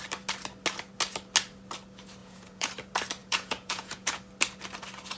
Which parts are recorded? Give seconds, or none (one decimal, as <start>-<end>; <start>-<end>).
0.0-2.2; 2.7-3.2; 4.2-5.2